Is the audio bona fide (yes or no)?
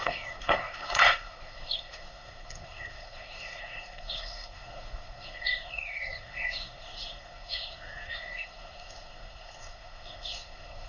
no